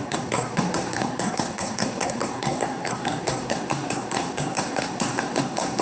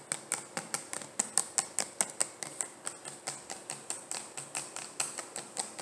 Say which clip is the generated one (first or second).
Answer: first